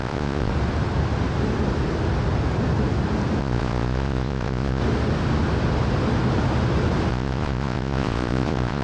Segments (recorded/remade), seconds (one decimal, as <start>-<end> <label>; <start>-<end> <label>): 0.0-0.5 remade; 0.5-3.4 recorded; 3.4-4.8 remade; 4.8-7.1 recorded; 7.1-8.8 remade